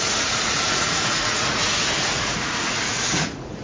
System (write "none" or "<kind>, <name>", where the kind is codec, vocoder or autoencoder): vocoder, Vocos